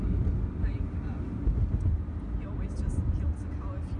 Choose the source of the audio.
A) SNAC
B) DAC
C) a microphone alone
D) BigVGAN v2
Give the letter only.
C